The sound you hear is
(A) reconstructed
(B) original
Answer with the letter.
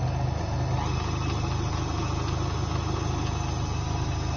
B